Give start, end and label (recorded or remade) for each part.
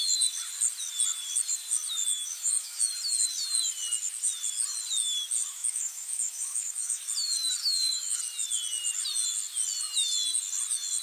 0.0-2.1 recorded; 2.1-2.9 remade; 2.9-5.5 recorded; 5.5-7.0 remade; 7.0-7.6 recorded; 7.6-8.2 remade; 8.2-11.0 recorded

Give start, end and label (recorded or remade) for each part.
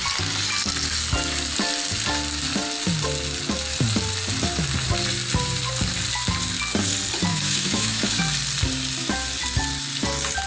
0.0-7.3 recorded; 7.3-8.2 remade; 8.2-10.5 recorded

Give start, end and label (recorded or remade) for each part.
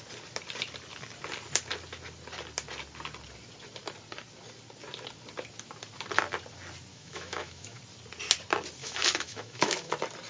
0.0-6.9 recorded; 6.9-7.8 remade; 7.8-8.8 recorded; 8.8-9.9 remade; 9.9-10.3 recorded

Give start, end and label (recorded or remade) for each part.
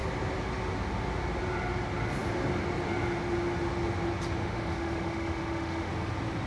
0.0-4.4 recorded; 4.4-5.9 remade; 5.9-6.5 recorded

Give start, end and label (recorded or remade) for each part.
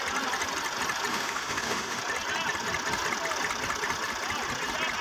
0.0-1.1 recorded; 1.1-2.0 remade; 2.0-5.0 recorded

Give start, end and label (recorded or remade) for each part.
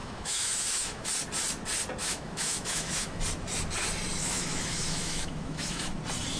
0.0-1.1 remade; 1.1-2.0 recorded; 2.0-3.2 remade; 3.2-4.2 recorded; 4.2-6.0 remade; 6.0-6.4 recorded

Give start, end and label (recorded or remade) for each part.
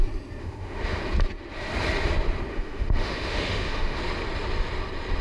0.0-0.4 recorded; 0.4-1.0 remade; 1.0-2.5 recorded; 2.5-4.0 remade; 4.0-5.2 recorded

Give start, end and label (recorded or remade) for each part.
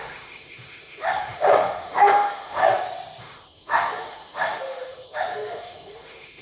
0.0-2.6 remade; 2.6-3.2 recorded; 3.2-6.4 remade